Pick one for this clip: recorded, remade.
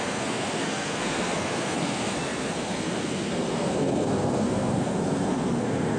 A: remade